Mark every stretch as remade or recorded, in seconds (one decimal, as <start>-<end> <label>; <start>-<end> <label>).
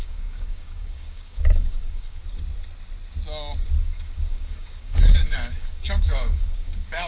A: 0.0-2.2 remade; 2.2-3.8 recorded; 3.8-7.1 remade